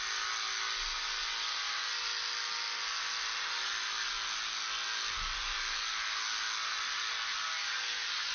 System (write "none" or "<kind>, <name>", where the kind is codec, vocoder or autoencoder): none